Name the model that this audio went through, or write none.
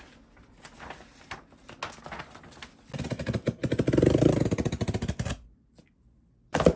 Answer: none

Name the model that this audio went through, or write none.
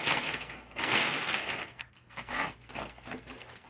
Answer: codec, SNAC